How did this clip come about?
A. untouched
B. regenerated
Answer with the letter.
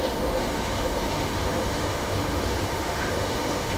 B